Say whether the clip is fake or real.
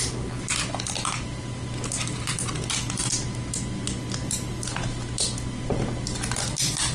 real